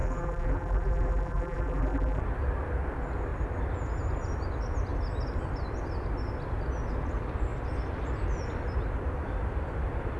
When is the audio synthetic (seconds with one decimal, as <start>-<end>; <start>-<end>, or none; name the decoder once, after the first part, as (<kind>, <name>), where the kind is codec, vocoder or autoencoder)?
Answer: 0.0-2.2 (vocoder, BigVGAN v2)